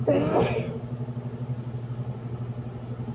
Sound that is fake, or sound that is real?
real